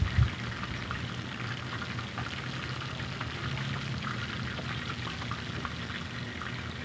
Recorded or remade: recorded